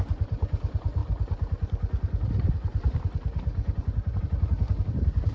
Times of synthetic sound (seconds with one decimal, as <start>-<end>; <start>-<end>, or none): 0.0-1.0; 4.2-5.3